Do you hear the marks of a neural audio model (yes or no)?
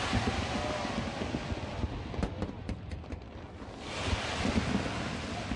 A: no